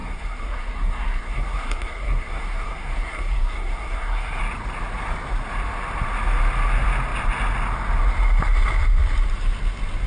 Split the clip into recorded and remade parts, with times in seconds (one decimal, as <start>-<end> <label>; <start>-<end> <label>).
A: 0.0-4.4 remade; 4.4-10.1 recorded